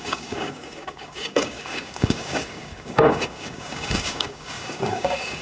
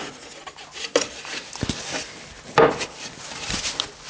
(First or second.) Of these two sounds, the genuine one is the second